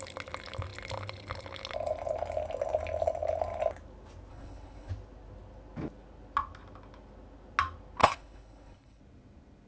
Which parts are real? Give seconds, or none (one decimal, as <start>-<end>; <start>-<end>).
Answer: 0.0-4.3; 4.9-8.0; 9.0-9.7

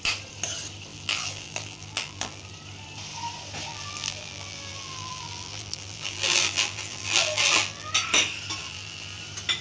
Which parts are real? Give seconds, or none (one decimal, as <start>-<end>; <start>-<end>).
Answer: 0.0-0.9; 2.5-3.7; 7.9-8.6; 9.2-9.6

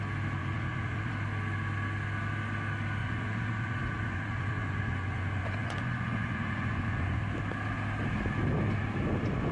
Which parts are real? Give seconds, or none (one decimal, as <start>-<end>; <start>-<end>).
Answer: 0.0-0.4; 1.1-3.0; 7.2-9.5

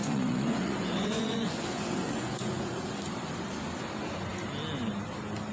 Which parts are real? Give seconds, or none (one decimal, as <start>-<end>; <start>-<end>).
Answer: 2.6-5.5